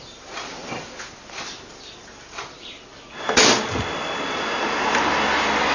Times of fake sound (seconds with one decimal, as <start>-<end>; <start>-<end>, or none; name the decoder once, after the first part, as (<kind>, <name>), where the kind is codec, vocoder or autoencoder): none

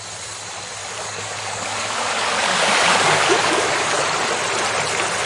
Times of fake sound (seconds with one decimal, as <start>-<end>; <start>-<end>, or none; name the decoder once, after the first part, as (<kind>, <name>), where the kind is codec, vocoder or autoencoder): 0.8-4.0 (codec, DAC)